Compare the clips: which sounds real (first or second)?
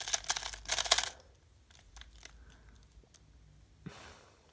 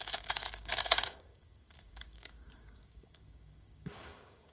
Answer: first